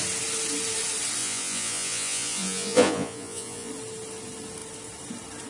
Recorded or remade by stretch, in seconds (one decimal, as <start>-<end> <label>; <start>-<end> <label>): 0.0-1.2 recorded; 1.2-3.7 remade; 3.7-5.5 recorded